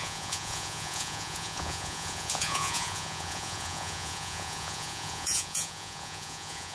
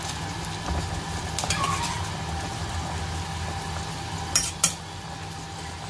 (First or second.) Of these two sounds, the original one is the second